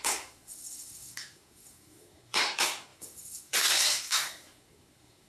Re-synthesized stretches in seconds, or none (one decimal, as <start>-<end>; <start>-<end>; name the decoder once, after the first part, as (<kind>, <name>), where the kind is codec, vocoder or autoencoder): 0.0-5.3 (codec, SNAC)

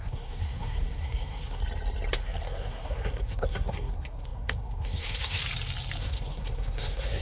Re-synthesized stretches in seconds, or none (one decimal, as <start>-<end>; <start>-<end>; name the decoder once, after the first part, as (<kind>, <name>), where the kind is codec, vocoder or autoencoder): 0.0-1.6 (codec, SNAC); 2.2-5.4; 6.0-7.2

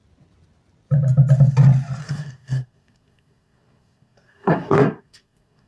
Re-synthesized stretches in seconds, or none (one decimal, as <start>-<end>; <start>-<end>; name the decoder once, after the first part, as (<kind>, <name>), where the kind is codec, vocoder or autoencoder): 2.0-5.7 (codec, SNAC)